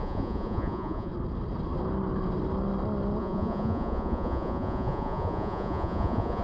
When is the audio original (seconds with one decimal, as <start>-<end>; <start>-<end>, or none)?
1.1-3.2